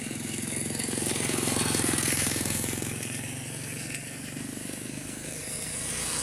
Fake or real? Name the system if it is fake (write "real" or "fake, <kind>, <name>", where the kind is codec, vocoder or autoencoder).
fake, codec, SNAC